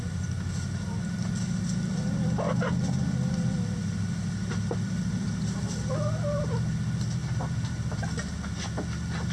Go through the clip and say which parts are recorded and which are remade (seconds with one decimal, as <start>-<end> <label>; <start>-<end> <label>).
0.0-4.4 recorded; 4.4-6.4 remade; 6.4-7.2 recorded; 7.2-8.0 remade; 8.0-9.3 recorded